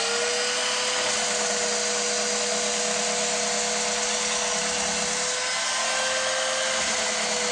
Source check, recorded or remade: recorded